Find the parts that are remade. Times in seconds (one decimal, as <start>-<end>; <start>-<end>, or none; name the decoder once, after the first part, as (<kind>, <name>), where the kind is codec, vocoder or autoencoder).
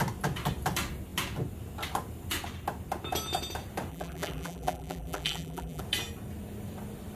3.9-5.8 (vocoder, BigVGAN v2)